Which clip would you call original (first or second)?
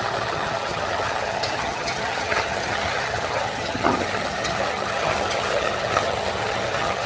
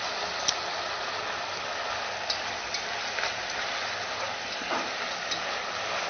second